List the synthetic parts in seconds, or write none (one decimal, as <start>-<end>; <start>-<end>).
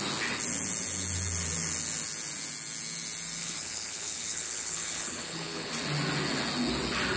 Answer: 3.4-5.7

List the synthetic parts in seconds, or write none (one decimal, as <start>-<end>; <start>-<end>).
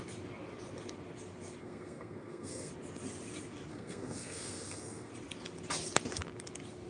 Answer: 1.6-2.7; 3.7-5.1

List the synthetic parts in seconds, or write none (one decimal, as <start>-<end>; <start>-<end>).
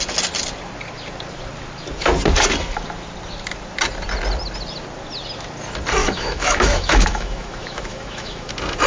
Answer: 6.0-8.5